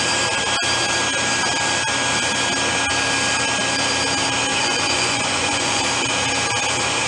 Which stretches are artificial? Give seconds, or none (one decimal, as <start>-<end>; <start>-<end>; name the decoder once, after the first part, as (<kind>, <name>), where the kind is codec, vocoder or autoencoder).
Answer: 4.5-5.8 (vocoder, Vocos)